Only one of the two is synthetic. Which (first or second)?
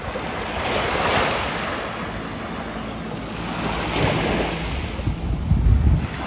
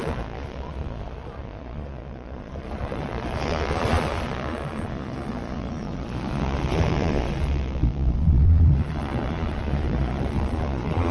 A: second